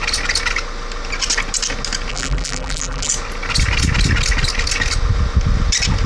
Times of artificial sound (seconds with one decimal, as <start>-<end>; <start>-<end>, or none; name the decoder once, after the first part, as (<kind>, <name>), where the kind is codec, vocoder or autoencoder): 2.1-3.1 (vocoder, BigVGAN v2)